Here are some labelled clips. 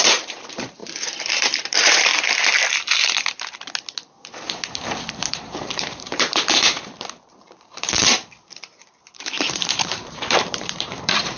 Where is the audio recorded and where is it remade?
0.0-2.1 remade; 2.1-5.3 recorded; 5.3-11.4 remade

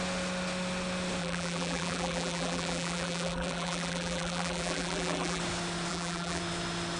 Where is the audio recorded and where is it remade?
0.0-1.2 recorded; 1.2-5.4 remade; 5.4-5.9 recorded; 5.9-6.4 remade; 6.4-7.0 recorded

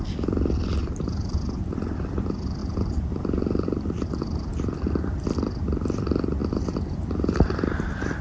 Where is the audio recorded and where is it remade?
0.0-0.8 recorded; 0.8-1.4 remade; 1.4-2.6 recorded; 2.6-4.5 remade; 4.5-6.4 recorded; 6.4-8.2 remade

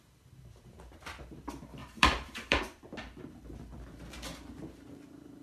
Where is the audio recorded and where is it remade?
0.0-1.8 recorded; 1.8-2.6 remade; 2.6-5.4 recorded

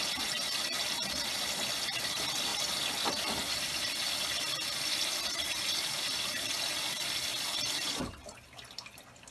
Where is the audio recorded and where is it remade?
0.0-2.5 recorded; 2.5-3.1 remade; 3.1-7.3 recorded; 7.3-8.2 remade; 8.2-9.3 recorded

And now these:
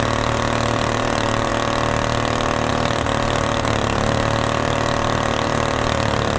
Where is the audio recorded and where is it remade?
0.0-1.5 remade; 1.5-2.7 recorded; 2.7-6.4 remade

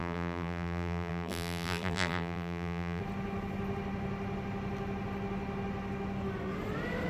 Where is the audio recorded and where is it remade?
0.0-3.0 remade; 3.0-7.1 recorded

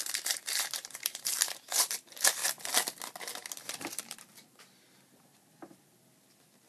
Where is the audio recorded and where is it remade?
0.0-2.4 remade; 2.4-6.7 recorded